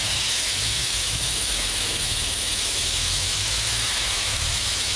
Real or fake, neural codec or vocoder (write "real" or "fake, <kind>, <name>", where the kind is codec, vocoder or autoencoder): fake, autoencoder, DAC-VAE